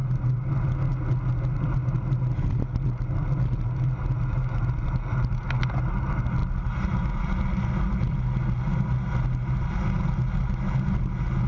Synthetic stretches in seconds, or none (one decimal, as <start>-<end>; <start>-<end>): none